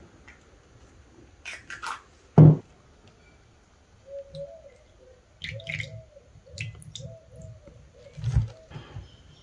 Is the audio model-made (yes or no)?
no